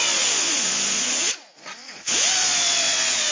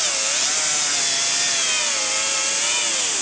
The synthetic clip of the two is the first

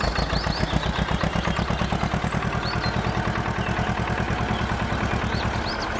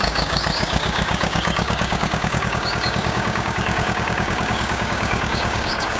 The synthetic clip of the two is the second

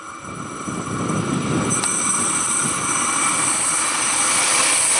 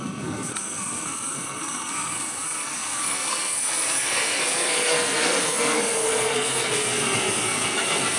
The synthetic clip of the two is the second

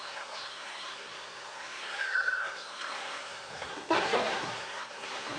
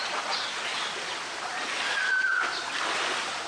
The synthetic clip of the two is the first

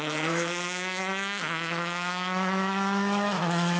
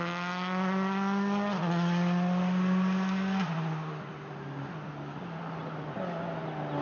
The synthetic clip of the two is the first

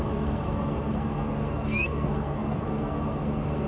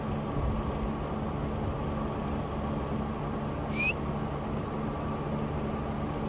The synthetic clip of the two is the first